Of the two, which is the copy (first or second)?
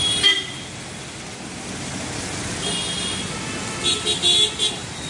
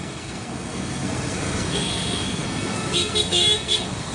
second